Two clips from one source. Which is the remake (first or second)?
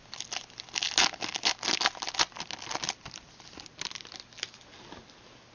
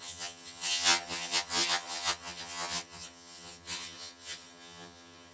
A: second